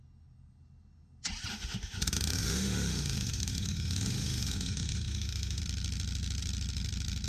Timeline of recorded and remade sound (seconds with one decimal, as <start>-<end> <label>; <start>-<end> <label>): 0.0-1.5 recorded; 1.5-5.6 remade; 5.6-7.3 recorded